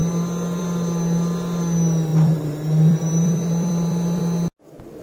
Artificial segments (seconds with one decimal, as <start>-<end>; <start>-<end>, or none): 2.1-4.2